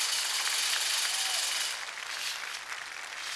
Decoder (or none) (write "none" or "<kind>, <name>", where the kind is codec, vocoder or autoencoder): none